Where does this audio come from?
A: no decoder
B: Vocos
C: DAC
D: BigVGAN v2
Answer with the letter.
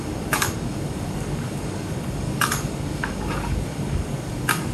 C